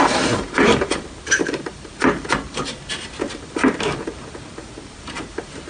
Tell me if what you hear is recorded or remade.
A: remade